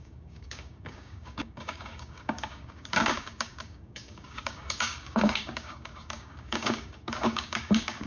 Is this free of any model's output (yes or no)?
no